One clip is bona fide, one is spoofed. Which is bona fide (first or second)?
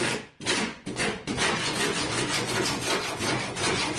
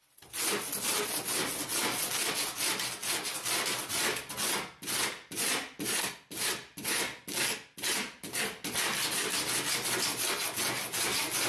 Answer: second